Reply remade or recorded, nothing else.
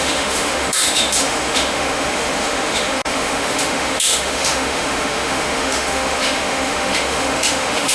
remade